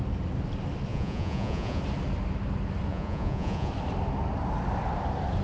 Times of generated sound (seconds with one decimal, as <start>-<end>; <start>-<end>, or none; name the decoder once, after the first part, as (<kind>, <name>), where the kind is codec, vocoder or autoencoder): 0.9-1.8 (vocoder, Vocos); 2.9-3.7